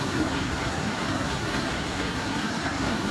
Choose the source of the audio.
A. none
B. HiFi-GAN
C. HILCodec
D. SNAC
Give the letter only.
D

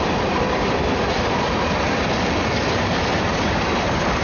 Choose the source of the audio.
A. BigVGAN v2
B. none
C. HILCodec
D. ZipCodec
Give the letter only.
A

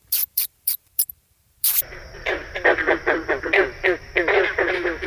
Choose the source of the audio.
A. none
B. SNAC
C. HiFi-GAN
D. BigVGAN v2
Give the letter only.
D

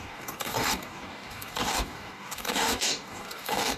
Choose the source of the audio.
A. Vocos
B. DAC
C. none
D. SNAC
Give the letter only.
B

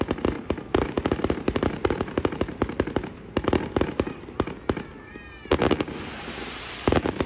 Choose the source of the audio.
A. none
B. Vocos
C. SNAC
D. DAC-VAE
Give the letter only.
A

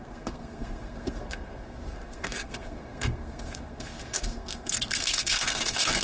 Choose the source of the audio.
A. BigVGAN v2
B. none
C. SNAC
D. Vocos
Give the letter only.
C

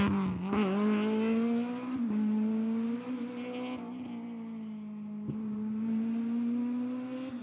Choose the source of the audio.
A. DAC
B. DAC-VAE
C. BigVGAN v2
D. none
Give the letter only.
D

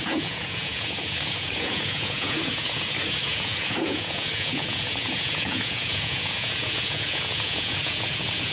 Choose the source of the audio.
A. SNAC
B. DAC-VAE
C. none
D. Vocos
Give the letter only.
D